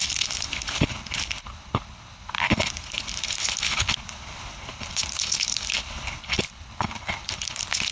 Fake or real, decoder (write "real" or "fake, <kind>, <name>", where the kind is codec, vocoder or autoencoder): fake, codec, HILCodec